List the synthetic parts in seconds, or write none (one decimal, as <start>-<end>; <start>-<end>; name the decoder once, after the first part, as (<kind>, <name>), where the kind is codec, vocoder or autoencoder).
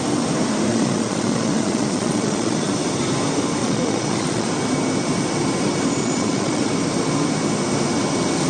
0.7-2.7 (vocoder, Vocos); 3.6-4.5; 6.0-6.7